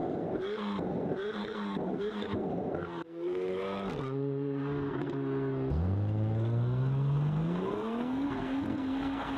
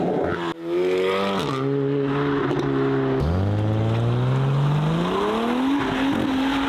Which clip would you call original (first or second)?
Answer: second